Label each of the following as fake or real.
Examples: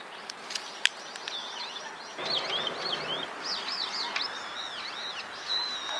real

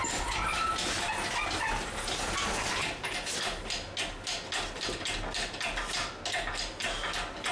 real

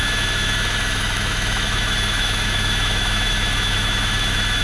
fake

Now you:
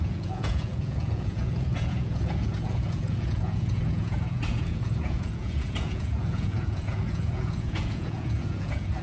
fake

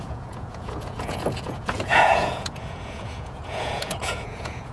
fake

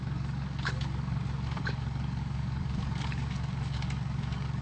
fake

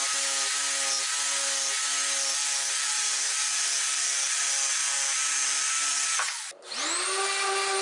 real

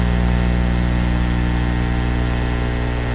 real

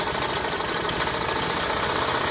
real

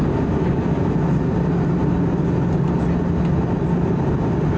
real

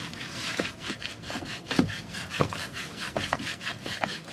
fake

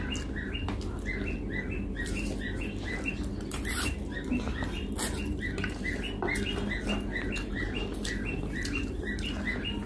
real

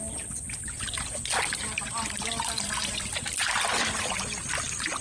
real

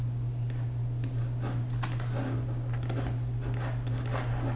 real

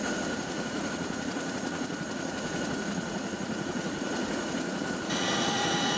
fake